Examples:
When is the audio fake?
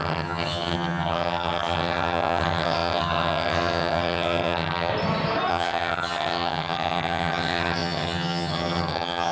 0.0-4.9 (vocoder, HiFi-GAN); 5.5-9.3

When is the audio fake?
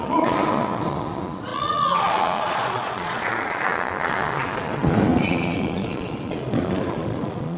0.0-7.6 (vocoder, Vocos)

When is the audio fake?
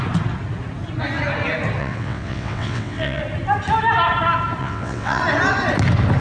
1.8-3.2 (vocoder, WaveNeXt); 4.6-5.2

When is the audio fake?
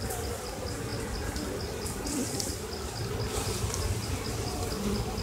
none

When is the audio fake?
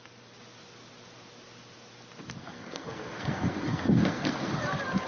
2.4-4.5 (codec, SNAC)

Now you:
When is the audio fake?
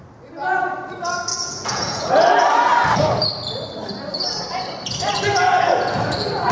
1.3-2.1 (vocoder, Vocos)